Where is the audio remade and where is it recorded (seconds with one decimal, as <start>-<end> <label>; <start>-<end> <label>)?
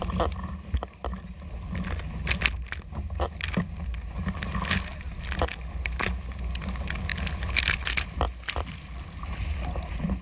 0.0-10.2 recorded